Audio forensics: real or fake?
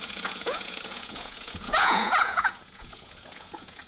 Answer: fake